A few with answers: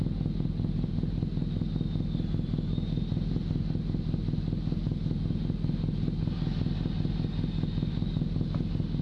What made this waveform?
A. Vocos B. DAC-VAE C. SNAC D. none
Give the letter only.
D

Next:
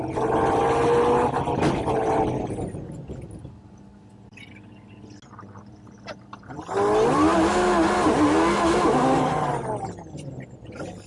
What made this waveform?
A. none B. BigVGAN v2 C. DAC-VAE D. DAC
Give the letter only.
A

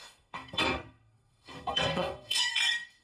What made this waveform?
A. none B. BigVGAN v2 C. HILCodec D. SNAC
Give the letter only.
D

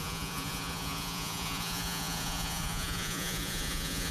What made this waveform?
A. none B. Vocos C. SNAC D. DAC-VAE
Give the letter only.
B